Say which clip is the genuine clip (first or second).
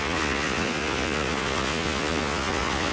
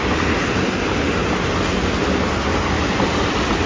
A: second